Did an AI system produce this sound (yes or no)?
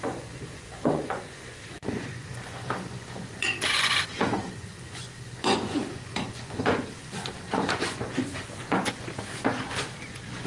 yes